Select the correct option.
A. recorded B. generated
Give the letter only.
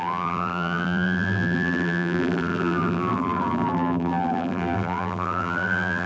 B